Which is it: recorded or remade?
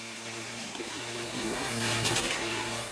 remade